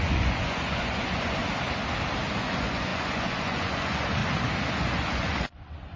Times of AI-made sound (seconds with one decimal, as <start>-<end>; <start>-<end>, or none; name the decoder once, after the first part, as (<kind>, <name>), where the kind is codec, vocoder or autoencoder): 0.0-1.4 (vocoder, Vocos); 2.3-4.2; 4.7-6.0